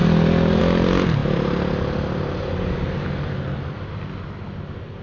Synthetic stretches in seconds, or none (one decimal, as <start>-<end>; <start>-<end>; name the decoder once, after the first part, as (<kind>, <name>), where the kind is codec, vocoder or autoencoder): none